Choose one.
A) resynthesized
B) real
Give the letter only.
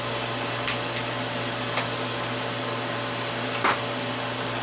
B